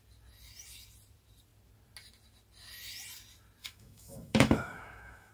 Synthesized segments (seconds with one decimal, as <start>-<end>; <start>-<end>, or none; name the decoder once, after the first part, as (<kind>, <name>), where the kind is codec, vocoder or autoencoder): 3.6-5.3 (autoencoder, DAC-VAE)